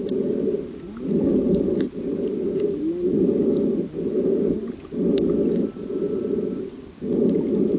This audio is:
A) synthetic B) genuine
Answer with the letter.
B